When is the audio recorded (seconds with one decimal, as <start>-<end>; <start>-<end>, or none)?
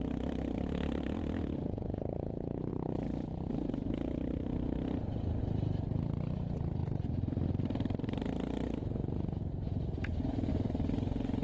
0.0-11.4